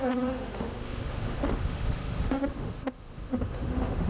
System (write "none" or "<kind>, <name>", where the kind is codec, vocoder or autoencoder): autoencoder, DAC-VAE